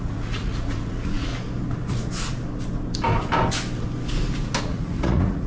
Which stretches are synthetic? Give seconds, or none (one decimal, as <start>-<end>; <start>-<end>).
0.0-1.3; 4.6-5.5